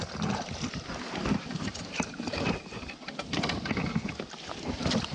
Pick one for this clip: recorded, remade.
recorded